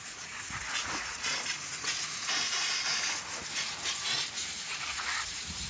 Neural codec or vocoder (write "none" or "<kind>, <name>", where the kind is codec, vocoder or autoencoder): vocoder, Vocos